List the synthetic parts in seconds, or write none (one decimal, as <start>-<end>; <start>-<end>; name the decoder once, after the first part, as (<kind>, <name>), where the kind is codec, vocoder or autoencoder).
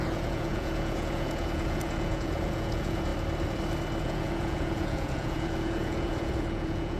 0.0-3.1 (vocoder, Vocos); 4.0-7.0